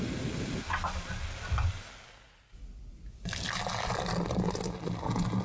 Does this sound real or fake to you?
real